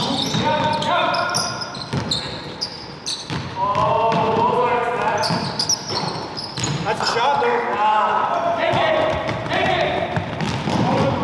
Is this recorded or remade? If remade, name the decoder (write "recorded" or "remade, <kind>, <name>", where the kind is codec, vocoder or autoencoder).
recorded